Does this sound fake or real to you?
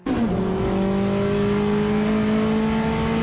real